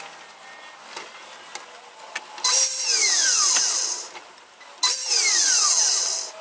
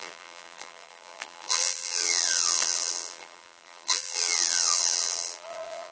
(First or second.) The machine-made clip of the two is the second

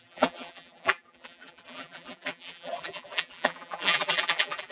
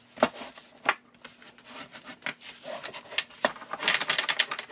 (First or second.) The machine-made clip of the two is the first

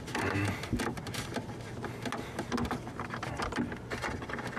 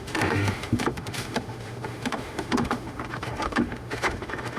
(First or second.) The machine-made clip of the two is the second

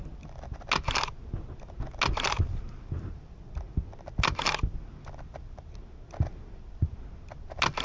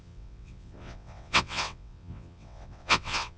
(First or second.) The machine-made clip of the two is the second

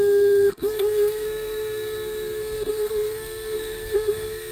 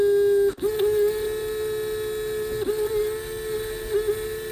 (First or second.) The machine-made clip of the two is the first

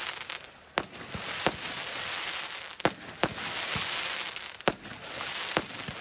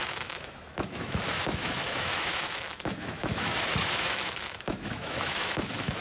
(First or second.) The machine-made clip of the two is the second